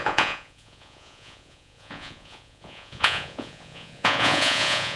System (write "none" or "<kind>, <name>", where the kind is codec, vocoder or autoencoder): vocoder, Vocos